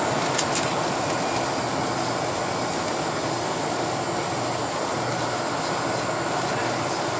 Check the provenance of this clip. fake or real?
real